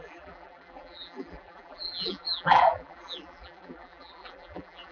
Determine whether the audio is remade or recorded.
remade